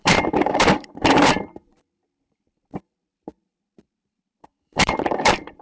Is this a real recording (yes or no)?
no